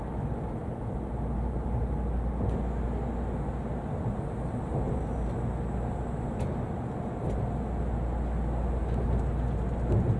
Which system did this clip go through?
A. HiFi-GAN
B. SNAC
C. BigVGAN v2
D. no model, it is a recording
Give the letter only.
D